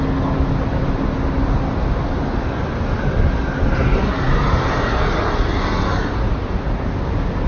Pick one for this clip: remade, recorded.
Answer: recorded